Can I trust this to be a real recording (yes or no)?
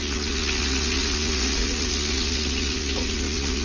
no